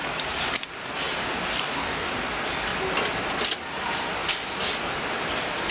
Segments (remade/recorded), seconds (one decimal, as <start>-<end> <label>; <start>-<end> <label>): 0.0-1.5 recorded; 1.5-2.1 remade; 2.1-5.7 recorded